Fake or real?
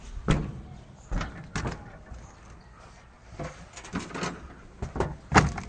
real